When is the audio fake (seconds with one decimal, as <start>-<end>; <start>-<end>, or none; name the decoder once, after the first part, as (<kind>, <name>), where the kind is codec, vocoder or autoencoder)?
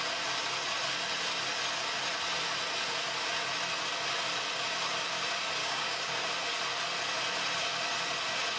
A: 5.6-6.2 (codec, DAC)